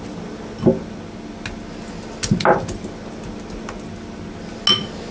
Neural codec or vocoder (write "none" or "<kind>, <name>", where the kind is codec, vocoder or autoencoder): none